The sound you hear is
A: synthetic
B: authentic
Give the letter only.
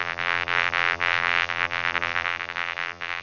A